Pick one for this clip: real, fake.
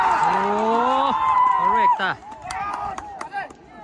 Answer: real